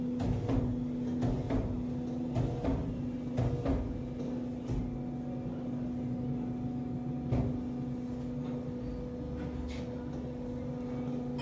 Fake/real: real